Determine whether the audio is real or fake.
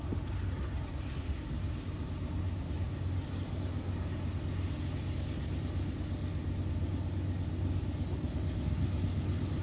real